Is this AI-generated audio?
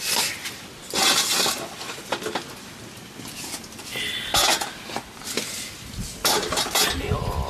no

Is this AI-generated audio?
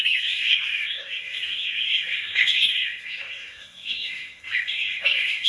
yes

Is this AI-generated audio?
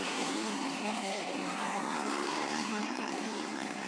yes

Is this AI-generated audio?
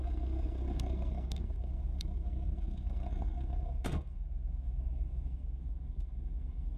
yes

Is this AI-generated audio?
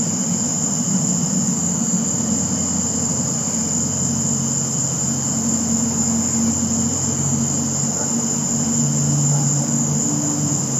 no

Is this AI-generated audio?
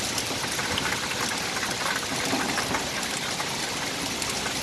no